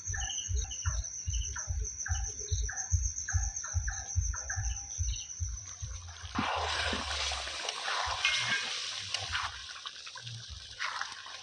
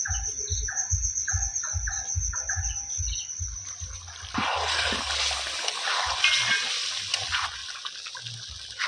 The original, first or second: second